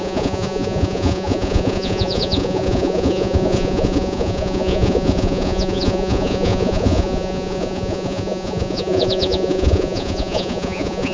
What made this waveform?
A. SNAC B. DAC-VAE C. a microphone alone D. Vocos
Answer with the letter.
D